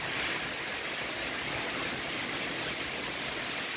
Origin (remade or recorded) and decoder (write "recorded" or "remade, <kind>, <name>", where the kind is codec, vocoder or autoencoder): recorded